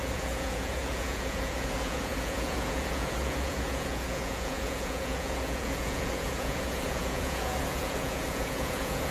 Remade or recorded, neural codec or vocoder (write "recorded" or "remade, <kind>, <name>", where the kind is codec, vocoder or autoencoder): remade, vocoder, Vocos